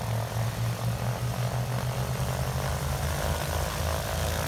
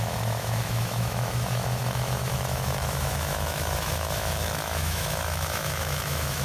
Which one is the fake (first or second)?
second